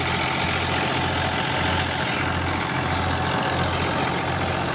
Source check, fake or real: real